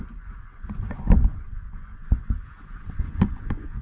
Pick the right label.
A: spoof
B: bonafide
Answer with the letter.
A